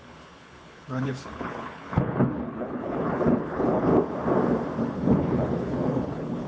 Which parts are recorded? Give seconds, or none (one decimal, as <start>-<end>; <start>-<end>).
3.9-4.8